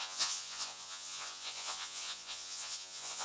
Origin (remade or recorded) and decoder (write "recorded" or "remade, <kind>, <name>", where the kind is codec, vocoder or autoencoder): remade, vocoder, Vocos